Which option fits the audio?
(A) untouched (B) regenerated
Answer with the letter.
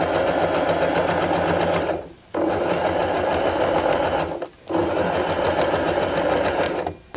A